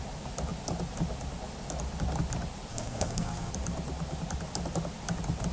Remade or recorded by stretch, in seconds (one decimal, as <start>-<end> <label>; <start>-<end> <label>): 0.0-2.7 recorded; 2.7-3.5 remade; 3.5-5.5 recorded